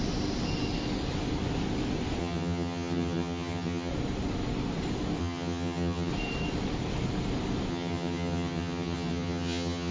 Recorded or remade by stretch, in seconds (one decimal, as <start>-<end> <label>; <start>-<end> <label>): 0.0-2.2 recorded; 2.2-3.9 remade; 3.9-5.2 recorded; 5.2-6.1 remade; 6.1-7.7 recorded; 7.7-9.9 remade